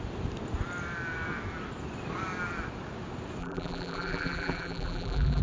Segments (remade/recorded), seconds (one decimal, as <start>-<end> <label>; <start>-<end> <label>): 0.0-3.4 recorded; 3.4-5.4 remade

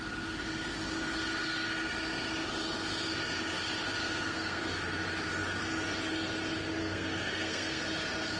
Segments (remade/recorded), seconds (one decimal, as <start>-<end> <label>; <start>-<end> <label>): 0.0-4.0 recorded; 4.0-4.6 remade; 4.6-6.8 recorded; 6.8-7.8 remade; 7.8-8.4 recorded

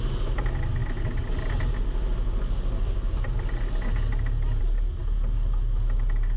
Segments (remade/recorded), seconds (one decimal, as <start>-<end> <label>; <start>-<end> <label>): 0.0-6.4 recorded

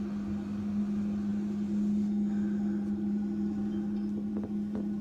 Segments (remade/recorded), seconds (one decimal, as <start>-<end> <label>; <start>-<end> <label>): 0.0-5.0 recorded

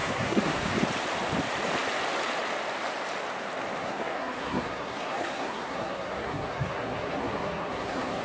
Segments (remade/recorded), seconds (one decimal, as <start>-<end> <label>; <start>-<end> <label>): 0.0-0.7 remade; 0.7-3.8 recorded; 3.8-8.2 remade

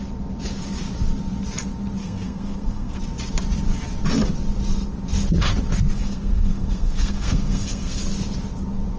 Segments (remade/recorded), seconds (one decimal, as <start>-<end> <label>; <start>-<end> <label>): 0.0-2.0 recorded; 2.0-3.0 remade; 3.0-5.9 recorded; 5.9-8.0 remade; 8.0-9.0 recorded

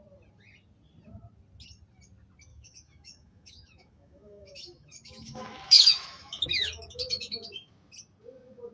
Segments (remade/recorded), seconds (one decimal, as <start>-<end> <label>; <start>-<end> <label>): 0.0-2.5 recorded; 2.5-7.7 remade; 7.7-8.7 recorded